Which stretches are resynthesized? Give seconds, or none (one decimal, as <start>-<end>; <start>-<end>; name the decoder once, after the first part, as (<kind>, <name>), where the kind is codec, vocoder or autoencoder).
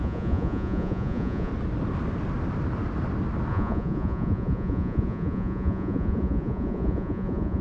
0.0-1.5 (vocoder, Vocos); 3.5-7.6